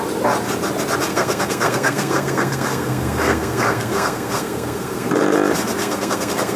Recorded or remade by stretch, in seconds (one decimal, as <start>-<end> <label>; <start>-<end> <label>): 0.0-1.1 recorded; 1.1-5.1 remade; 5.1-5.8 recorded; 5.8-6.6 remade

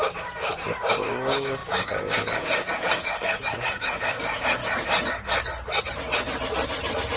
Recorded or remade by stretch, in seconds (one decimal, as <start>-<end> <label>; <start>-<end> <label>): 0.0-4.6 remade; 4.6-7.2 recorded

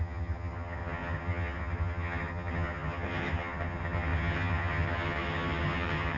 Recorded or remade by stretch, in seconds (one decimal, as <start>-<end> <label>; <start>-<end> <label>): 0.0-6.2 remade